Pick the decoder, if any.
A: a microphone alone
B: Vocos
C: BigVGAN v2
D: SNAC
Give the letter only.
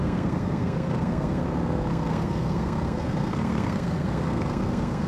D